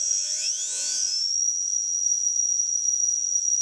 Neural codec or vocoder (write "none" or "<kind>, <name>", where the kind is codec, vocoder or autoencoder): vocoder, Vocos